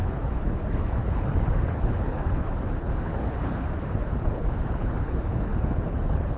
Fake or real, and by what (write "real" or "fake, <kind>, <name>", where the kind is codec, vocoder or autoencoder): fake, codec, HILCodec